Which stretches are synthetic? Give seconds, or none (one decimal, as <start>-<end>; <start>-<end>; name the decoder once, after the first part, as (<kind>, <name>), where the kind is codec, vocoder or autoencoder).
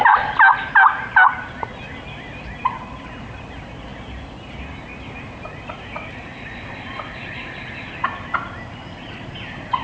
none